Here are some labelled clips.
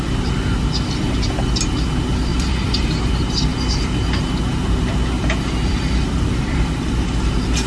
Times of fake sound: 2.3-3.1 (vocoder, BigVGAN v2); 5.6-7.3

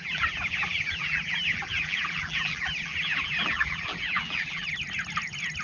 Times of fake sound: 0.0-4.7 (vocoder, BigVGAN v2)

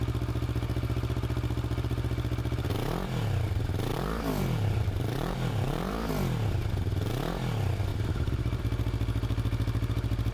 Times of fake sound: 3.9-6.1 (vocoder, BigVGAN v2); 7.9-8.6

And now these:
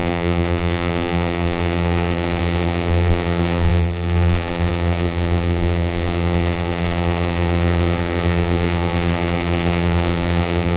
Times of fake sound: 0.0-10.8 (vocoder, BigVGAN v2)

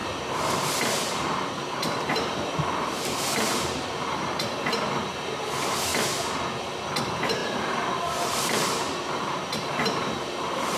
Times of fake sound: 0.0-5.9 (vocoder, BigVGAN v2); 6.6-10.8

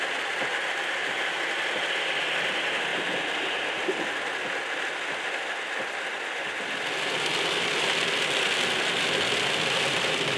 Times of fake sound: 1.0-1.6 (vocoder, BigVGAN v2)

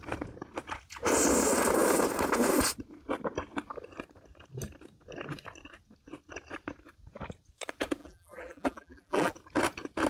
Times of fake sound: 8.0-9.3 (vocoder, BigVGAN v2)